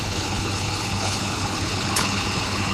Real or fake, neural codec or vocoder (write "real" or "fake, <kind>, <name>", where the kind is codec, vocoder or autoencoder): fake, codec, HILCodec